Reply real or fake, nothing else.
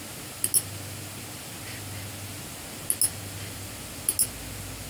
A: real